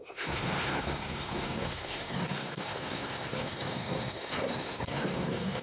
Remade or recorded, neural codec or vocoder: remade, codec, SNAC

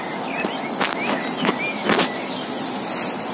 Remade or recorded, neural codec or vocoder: recorded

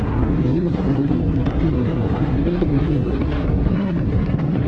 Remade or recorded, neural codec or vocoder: remade, codec, SNAC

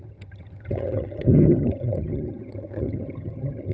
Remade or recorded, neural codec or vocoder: remade, vocoder, HiFi-GAN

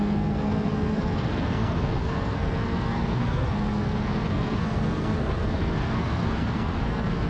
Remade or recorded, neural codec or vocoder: remade, codec, SNAC